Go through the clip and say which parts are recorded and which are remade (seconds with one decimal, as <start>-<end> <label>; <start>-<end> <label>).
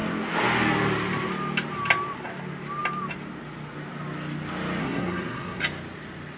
0.0-4.8 recorded; 4.8-5.6 remade; 5.6-6.4 recorded